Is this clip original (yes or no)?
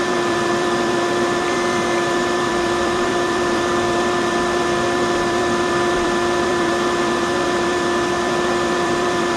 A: no